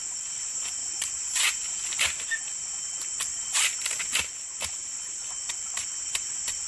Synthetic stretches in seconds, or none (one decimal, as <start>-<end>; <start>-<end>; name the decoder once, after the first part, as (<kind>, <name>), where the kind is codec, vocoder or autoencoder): none